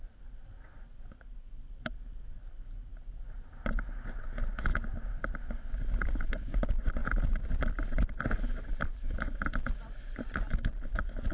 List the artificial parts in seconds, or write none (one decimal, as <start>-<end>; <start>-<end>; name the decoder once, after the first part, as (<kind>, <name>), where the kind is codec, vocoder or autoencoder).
none